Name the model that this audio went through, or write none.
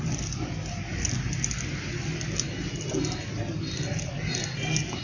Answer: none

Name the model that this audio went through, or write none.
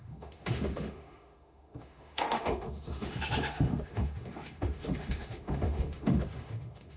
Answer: autoencoder, DAC-VAE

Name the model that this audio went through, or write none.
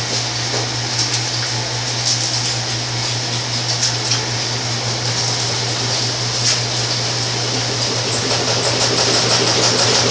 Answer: none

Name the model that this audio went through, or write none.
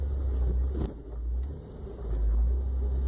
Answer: none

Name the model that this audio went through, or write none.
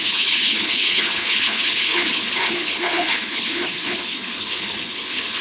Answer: codec, HILCodec